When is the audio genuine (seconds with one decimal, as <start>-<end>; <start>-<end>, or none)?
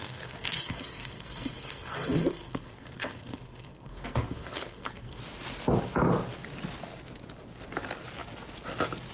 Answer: 5.2-9.1